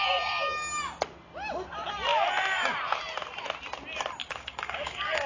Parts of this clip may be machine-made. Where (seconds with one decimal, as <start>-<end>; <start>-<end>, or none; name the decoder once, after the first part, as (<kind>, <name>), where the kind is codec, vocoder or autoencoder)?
4.2-5.3 (codec, DAC)